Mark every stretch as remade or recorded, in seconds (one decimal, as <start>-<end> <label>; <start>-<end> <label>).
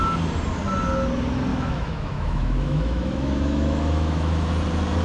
0.0-1.5 recorded; 1.5-4.5 remade; 4.5-5.0 recorded